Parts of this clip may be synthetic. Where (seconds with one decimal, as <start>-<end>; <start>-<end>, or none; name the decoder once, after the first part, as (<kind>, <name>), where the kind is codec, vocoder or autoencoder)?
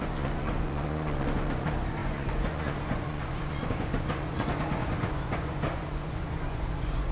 0.0-7.1 (vocoder, Vocos)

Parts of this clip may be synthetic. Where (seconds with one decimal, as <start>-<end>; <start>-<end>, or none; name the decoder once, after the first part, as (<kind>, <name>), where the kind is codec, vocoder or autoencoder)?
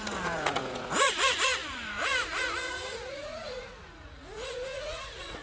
0.0-5.4 (vocoder, Vocos)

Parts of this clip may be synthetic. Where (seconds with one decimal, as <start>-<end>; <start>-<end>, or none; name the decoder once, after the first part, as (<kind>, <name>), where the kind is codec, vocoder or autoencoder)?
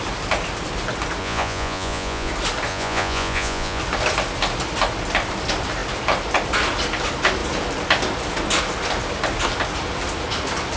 1.2-2.3 (vocoder, Vocos); 2.7-3.8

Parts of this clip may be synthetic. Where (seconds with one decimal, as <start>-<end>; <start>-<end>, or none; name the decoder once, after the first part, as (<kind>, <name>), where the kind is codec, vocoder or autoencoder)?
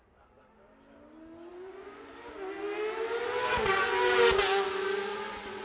1.5-2.1 (vocoder, Vocos); 5.1-5.6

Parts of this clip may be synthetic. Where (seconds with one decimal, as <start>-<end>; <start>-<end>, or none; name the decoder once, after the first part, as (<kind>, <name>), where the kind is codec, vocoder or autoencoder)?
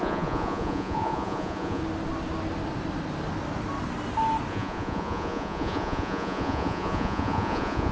0.0-1.8 (vocoder, Vocos); 4.5-7.9